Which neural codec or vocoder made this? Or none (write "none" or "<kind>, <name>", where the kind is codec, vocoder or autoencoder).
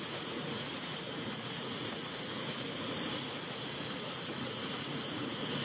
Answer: vocoder, Vocos